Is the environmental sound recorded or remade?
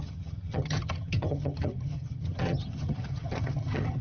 remade